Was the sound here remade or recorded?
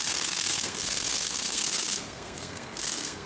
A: remade